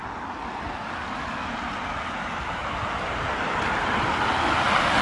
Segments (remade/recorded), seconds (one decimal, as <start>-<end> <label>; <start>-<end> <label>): 0.0-5.0 recorded